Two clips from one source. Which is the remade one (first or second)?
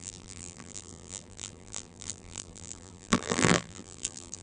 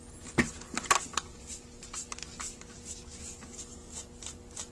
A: first